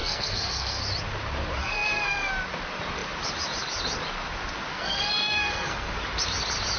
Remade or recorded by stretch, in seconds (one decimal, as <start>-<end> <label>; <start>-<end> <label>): 0.0-0.8 remade; 0.8-1.6 recorded; 1.6-2.3 remade; 2.3-4.7 recorded; 4.7-5.9 remade; 5.9-6.8 recorded